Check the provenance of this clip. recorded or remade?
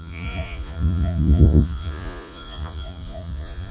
remade